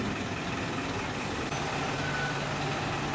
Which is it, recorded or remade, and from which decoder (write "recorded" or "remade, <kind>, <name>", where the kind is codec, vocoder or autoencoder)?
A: recorded